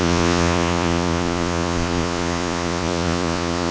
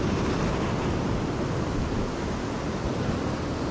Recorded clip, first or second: second